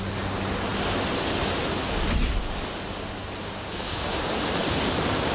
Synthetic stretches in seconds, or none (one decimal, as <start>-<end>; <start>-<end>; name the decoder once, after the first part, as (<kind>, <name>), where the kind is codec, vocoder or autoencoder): 3.4-4.2 (codec, DAC)